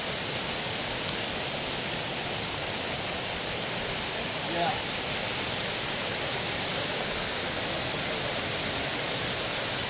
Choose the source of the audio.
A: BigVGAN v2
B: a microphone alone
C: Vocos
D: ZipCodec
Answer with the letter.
B